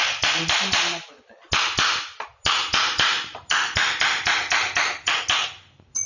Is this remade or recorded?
recorded